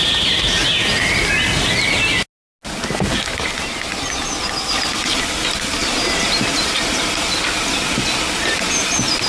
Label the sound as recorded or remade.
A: recorded